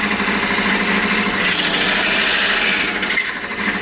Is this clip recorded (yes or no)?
yes